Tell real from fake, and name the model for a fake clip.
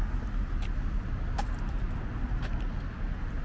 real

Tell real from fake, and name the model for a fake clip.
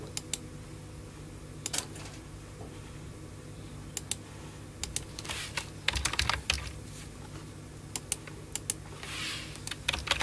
real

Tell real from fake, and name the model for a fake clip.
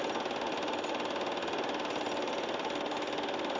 real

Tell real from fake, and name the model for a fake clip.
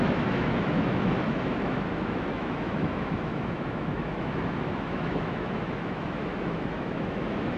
fake, autoencoder, DAC-VAE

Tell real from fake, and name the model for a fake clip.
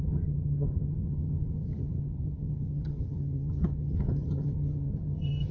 fake, vocoder, HiFi-GAN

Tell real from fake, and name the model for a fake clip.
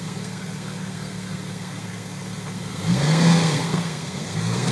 fake, codec, SNAC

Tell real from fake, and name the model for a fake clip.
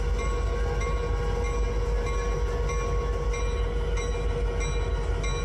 real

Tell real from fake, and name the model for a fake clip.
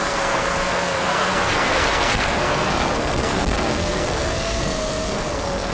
fake, codec, SNAC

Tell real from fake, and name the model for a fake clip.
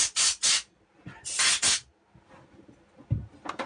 real